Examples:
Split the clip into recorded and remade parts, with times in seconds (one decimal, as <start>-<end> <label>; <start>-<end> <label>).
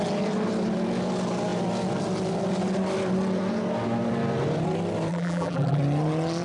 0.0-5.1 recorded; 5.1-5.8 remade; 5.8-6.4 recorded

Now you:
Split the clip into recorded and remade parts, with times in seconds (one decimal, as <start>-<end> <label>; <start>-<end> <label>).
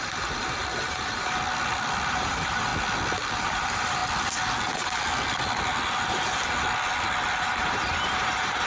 0.0-1.4 remade; 1.4-2.1 recorded; 2.1-2.7 remade; 2.7-3.4 recorded; 3.4-4.0 remade; 4.0-7.4 recorded; 7.4-8.7 remade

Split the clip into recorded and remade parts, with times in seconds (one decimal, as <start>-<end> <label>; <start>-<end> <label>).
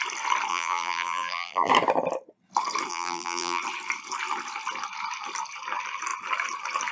0.0-0.5 recorded; 0.5-1.7 remade; 1.7-2.9 recorded; 2.9-3.6 remade; 3.6-6.9 recorded